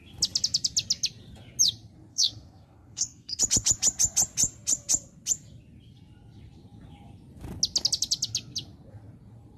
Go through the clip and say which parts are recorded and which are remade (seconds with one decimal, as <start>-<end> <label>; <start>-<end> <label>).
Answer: 0.0-2.1 recorded; 2.1-3.4 remade; 3.4-9.6 recorded